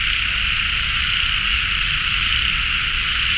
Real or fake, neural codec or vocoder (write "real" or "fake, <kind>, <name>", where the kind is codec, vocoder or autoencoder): real